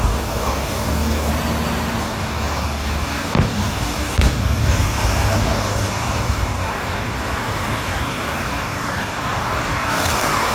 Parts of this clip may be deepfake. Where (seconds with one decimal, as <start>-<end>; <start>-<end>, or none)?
0.0-1.3; 2.0-10.5